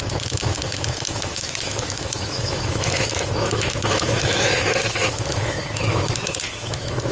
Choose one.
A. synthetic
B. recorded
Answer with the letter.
A